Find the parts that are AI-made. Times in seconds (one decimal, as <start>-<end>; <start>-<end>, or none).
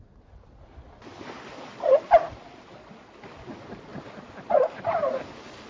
none